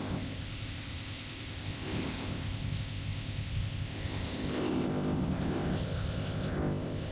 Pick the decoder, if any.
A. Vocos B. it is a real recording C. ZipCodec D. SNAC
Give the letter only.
C